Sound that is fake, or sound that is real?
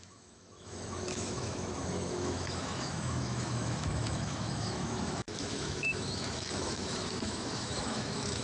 fake